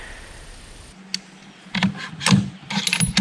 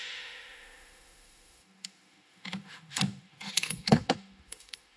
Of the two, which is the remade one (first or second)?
second